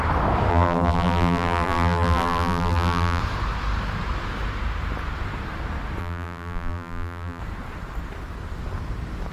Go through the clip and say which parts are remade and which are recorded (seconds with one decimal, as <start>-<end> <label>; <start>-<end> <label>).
0.0-0.5 recorded; 0.5-3.2 remade; 3.2-6.0 recorded; 6.0-7.4 remade; 7.4-9.3 recorded